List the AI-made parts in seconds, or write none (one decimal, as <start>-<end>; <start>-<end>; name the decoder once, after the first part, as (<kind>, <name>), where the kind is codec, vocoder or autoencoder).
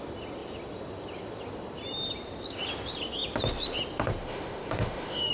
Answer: 4.2-5.3 (autoencoder, DAC-VAE)